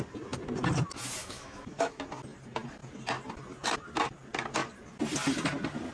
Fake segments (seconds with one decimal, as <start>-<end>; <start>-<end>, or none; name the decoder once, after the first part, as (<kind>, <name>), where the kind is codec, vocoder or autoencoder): 1.2-2.0 (autoencoder, DAC-VAE)